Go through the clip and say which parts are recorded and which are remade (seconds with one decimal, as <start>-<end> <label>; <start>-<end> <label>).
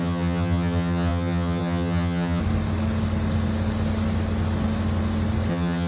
0.0-2.4 remade; 2.4-5.5 recorded; 5.5-5.9 remade